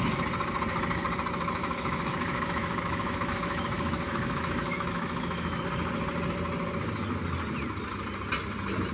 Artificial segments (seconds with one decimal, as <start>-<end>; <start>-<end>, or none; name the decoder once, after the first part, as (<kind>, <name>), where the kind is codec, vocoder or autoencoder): 1.6-5.6 (autoencoder, DAC-VAE)